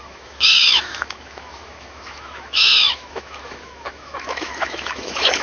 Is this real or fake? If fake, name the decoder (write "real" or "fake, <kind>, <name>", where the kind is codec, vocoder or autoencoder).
fake, autoencoder, DAC-VAE